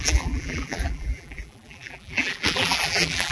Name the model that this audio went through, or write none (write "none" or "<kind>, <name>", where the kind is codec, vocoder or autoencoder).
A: vocoder, BigVGAN v2